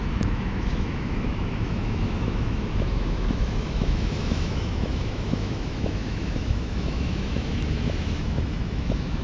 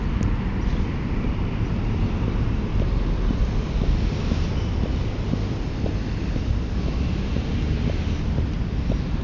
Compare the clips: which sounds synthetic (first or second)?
first